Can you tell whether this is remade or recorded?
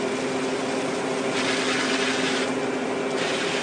recorded